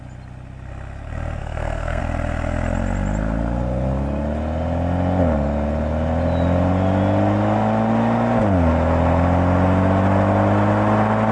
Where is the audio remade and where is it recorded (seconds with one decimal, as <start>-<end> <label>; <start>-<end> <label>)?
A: 0.0-1.4 recorded; 1.4-2.0 remade; 2.0-11.3 recorded